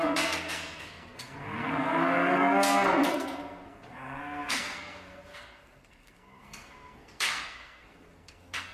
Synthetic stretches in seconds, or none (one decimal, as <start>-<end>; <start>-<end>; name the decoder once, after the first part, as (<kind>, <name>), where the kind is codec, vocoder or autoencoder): 0.0-8.7 (codec, SNAC)